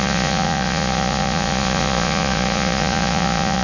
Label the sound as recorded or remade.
remade